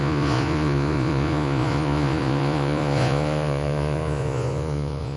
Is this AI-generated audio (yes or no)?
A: yes